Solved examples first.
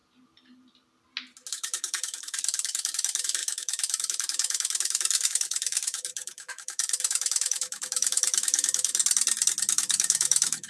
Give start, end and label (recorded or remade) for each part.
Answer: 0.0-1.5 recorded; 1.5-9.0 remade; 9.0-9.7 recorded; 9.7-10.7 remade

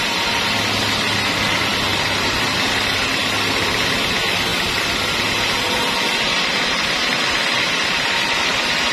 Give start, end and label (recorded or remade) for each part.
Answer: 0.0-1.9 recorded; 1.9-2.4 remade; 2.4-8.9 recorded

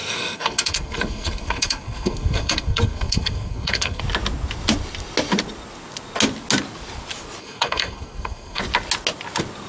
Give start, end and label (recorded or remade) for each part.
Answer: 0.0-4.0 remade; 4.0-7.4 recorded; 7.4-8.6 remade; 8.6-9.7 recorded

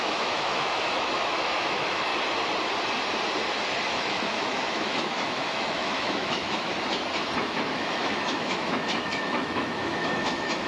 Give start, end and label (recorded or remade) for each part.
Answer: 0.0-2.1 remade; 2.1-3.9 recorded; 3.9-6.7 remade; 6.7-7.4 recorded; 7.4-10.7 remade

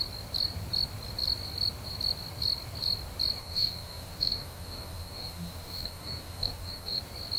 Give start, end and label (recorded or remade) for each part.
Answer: 0.0-3.4 recorded; 3.4-7.0 remade; 7.0-7.4 recorded

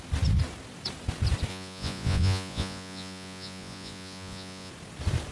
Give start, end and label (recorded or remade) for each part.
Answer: 0.0-1.5 recorded; 1.5-4.7 remade; 4.7-5.3 recorded

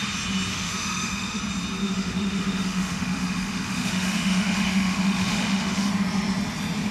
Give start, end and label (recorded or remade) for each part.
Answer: 0.0-0.5 recorded; 0.5-1.4 remade; 1.4-1.8 recorded; 1.8-5.9 remade; 5.9-6.9 recorded

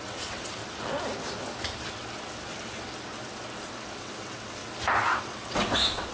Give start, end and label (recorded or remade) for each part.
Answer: 0.0-0.6 remade; 0.6-4.0 recorded; 4.0-4.6 remade; 4.6-5.2 recorded; 5.2-6.1 remade